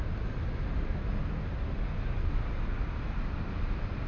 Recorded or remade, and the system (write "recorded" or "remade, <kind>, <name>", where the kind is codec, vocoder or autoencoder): recorded